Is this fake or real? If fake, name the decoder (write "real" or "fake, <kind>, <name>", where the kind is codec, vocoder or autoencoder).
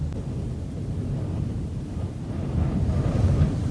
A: real